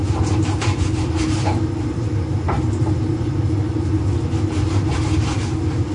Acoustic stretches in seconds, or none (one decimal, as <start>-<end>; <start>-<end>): 0.0-5.9